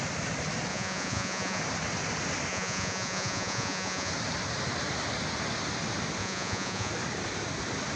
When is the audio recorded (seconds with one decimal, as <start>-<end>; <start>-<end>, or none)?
0.0-0.7; 1.6-2.5; 4.1-6.2; 6.9-8.0